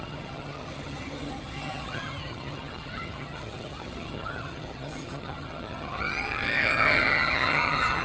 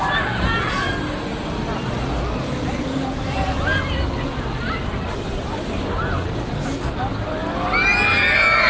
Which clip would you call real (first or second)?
second